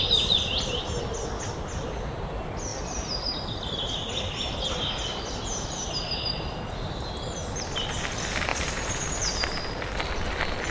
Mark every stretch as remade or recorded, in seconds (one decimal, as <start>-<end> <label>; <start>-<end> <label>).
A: 0.0-2.7 recorded; 2.7-6.6 remade; 6.6-8.5 recorded; 8.5-9.2 remade; 9.2-10.7 recorded